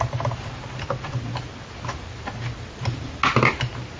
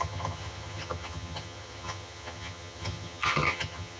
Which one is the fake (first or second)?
second